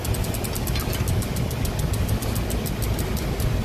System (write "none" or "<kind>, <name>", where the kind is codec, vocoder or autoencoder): none